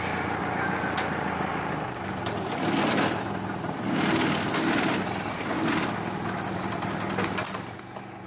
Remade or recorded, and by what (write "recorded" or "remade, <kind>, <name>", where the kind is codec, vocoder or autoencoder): recorded